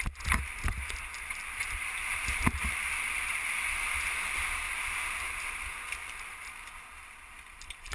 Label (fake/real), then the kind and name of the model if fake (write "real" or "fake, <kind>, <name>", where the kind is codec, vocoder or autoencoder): real